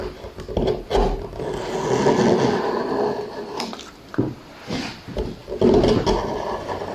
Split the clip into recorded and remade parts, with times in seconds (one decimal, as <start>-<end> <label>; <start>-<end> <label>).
0.0-6.9 recorded